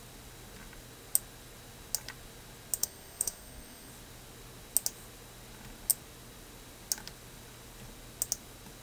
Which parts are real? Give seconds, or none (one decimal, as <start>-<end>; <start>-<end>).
0.0-2.8; 3.9-8.8